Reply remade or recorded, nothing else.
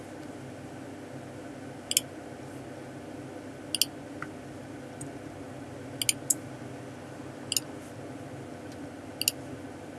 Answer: recorded